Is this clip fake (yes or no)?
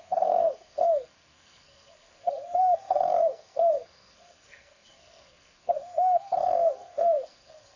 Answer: yes